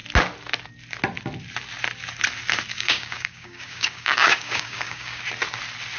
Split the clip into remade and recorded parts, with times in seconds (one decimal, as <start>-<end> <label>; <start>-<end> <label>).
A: 0.0-2.7 recorded; 2.7-5.2 remade; 5.2-6.0 recorded